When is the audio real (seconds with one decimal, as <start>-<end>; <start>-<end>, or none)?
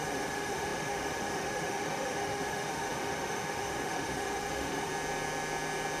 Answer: 4.9-6.0